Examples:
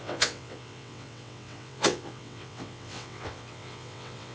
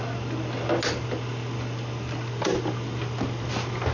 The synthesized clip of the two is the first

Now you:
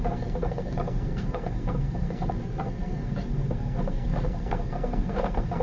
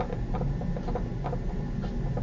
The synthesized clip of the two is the first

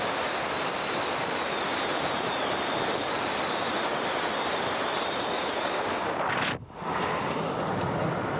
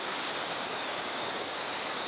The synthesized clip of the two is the second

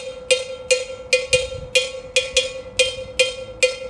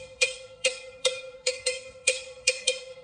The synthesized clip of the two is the second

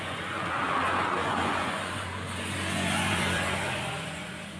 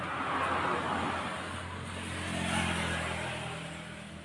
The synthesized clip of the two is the first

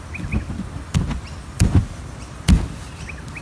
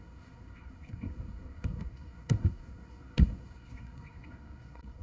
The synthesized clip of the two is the second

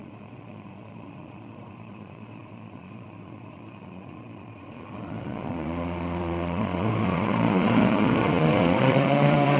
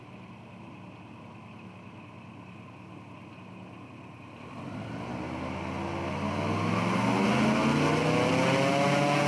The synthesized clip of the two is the first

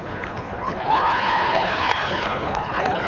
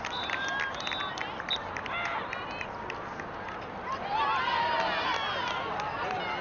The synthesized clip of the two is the first